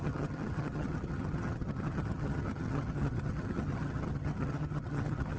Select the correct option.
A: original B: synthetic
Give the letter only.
B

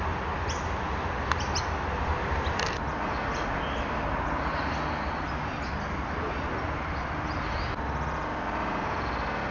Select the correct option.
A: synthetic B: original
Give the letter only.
B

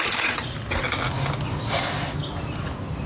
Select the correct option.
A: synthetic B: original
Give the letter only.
B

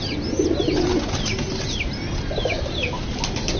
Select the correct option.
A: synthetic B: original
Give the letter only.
B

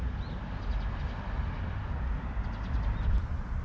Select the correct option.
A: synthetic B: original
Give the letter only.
B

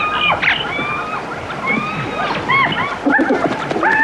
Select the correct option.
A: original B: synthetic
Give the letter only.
A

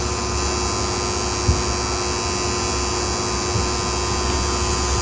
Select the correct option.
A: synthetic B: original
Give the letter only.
B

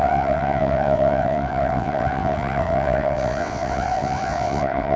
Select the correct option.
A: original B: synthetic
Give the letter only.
B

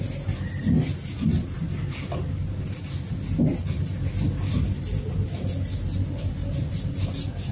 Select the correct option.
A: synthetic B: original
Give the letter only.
B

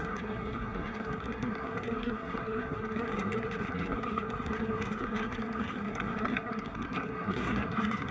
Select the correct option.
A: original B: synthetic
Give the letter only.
B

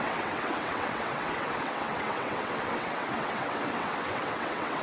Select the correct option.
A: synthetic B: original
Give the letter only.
A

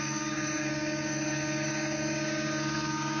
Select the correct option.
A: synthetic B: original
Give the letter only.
A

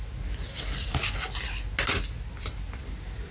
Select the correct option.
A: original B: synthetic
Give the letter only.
A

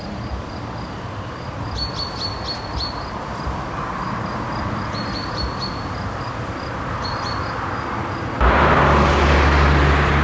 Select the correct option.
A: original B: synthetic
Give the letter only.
A